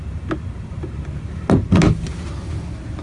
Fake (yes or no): no